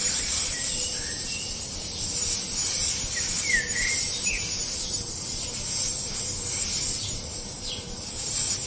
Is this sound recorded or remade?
remade